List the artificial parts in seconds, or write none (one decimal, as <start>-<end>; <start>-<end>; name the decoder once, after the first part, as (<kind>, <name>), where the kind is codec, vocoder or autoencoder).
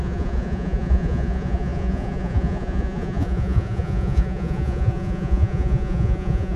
0.0-6.6 (vocoder, Vocos)